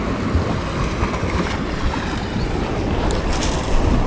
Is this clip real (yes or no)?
yes